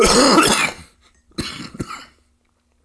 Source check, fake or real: real